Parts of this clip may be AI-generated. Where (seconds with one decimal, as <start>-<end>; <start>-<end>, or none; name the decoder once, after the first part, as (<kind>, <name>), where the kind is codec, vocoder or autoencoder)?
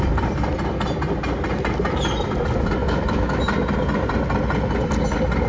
2.8-3.4 (autoencoder, DAC-VAE)